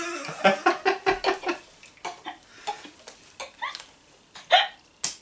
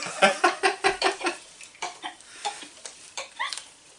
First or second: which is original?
first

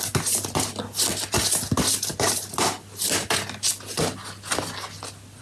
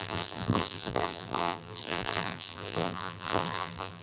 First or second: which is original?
first